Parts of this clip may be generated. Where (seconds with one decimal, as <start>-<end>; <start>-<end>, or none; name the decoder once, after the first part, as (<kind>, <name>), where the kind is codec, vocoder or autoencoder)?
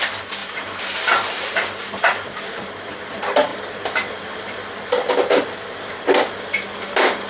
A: 0.4-2.9 (vocoder, BigVGAN v2)